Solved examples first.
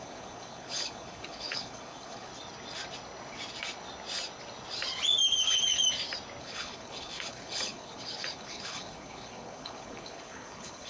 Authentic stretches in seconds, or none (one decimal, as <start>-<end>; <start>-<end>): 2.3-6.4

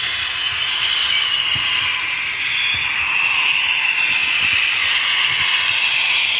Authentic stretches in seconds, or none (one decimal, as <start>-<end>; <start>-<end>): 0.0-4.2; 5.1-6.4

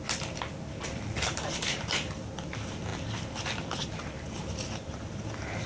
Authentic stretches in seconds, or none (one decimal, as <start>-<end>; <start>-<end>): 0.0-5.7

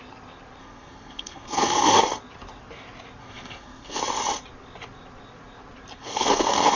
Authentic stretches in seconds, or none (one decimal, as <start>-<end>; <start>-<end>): 0.0-0.6; 2.0-3.2; 4.0-6.0

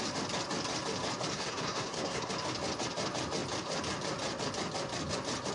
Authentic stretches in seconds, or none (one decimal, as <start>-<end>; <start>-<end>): 0.0-1.3; 2.3-5.5